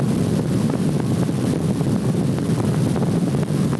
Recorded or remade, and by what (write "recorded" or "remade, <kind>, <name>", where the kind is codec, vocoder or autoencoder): recorded